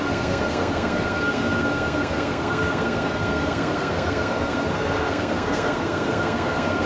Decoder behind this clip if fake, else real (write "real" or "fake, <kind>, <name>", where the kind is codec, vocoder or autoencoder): fake, codec, SNAC